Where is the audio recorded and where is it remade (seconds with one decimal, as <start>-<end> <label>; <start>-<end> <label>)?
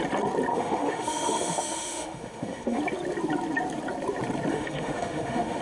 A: 0.0-0.5 recorded; 0.5-2.8 remade; 2.8-4.5 recorded; 4.5-5.6 remade